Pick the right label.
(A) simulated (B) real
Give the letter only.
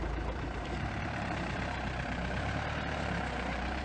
A